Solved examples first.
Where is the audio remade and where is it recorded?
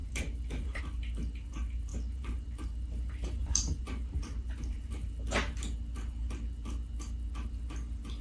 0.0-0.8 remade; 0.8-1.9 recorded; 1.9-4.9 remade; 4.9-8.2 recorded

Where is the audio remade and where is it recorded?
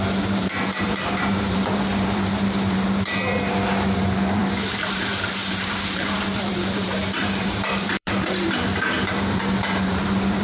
0.0-10.4 remade